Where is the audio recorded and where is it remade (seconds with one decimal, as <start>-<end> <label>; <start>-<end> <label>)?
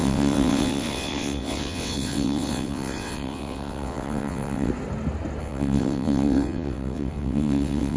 0.0-4.7 remade; 4.7-5.4 recorded; 5.4-8.0 remade